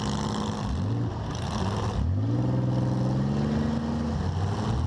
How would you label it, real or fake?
real